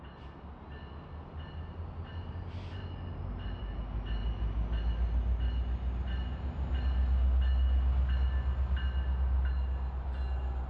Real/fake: real